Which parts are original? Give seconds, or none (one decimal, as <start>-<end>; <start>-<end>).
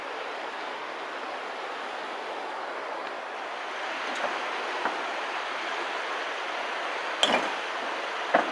0.0-8.5